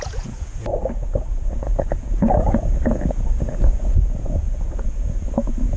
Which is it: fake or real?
fake